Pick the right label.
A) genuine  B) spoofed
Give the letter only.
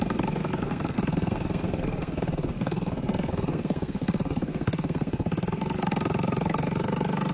B